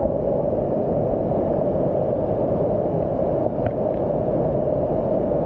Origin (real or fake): real